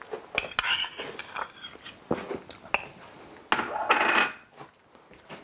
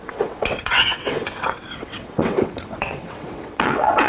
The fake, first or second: second